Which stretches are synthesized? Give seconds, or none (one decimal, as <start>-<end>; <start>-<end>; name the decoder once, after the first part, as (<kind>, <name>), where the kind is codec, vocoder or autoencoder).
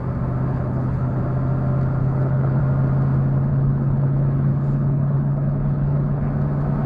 0.5-1.2 (codec, HILCodec); 2.0-2.6; 3.5-6.3